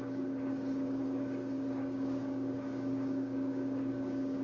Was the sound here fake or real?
fake